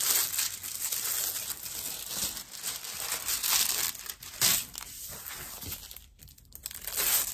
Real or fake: real